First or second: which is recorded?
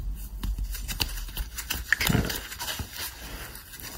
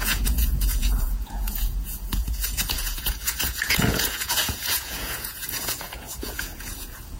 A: first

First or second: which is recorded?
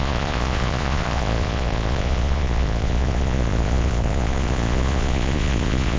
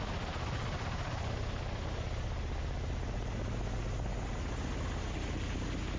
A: second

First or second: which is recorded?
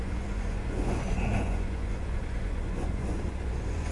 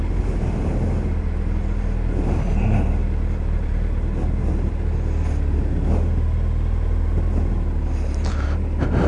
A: second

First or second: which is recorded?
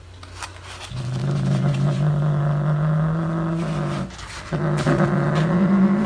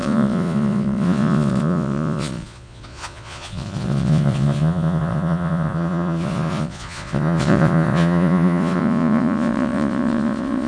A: first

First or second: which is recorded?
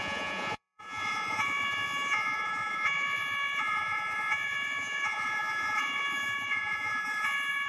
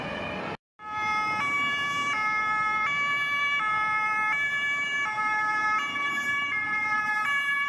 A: second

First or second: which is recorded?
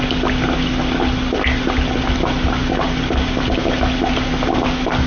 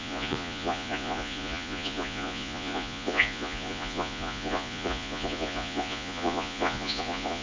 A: first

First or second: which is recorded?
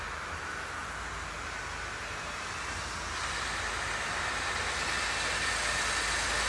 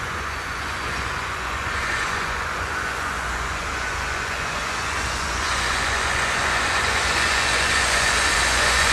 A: first